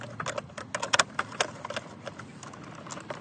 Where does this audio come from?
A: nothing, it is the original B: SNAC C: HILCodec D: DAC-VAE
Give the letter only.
A